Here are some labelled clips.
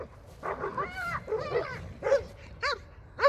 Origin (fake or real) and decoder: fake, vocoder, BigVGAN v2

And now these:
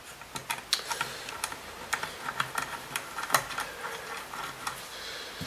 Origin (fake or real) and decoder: real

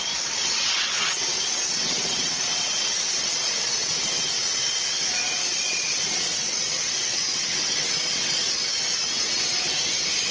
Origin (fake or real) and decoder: fake, vocoder, WaveNeXt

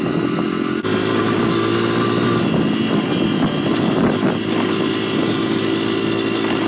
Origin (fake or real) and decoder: real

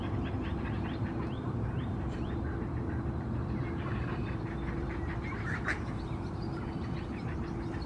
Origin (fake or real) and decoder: fake, vocoder, BigVGAN v2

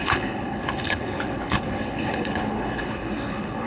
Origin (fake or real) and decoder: fake, codec, HILCodec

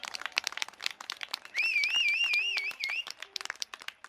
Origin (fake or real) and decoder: fake, vocoder, BigVGAN v2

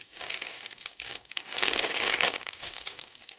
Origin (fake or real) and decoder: fake, codec, DAC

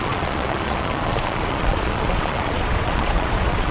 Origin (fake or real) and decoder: fake, vocoder, Vocos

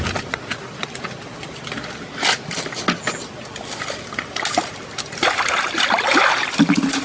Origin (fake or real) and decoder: real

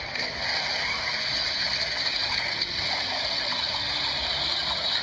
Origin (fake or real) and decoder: real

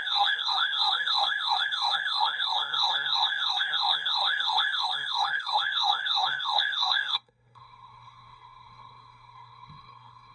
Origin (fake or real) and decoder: fake, codec, SNAC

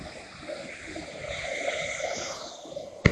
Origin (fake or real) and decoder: real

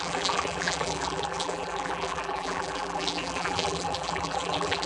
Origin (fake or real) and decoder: fake, vocoder, BigVGAN v2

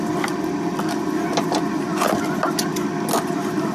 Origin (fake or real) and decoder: real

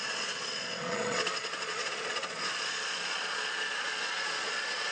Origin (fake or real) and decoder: fake, vocoder, Vocos